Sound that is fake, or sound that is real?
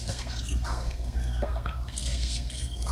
fake